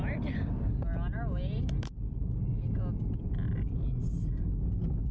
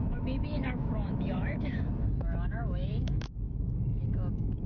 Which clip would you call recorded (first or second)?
first